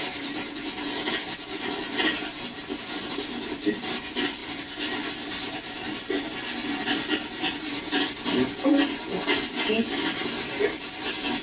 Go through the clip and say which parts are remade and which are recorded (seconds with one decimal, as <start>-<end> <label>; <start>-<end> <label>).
0.0-11.4 recorded

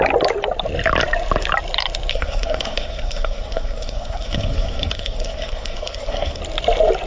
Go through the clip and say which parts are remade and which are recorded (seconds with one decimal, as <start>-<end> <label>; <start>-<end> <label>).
0.0-2.1 recorded; 2.1-6.4 remade; 6.4-7.1 recorded

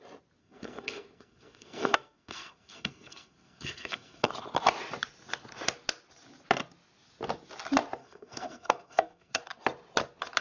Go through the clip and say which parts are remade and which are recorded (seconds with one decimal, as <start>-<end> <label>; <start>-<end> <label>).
0.0-0.4 recorded; 0.4-4.3 remade; 4.3-8.0 recorded; 8.0-9.4 remade; 9.4-10.4 recorded

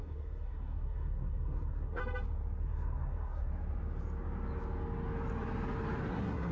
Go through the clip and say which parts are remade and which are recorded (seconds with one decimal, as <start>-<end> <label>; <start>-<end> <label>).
0.0-2.0 remade; 2.0-2.6 recorded; 2.6-3.5 remade; 3.5-6.1 recorded; 6.1-6.5 remade

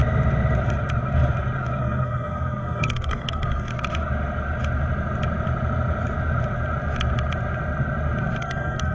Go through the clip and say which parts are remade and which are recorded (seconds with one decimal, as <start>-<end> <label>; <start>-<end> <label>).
0.0-1.8 recorded; 1.8-3.7 remade; 3.7-8.4 recorded; 8.4-8.9 remade

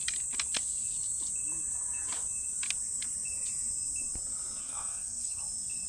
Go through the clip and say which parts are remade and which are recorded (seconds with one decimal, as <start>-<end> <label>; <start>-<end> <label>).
0.0-4.6 recorded; 4.6-5.4 remade; 5.4-5.9 recorded

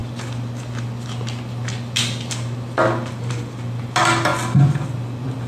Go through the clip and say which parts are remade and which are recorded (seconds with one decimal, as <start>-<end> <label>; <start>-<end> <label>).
0.0-5.5 recorded